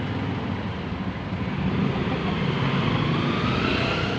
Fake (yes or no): yes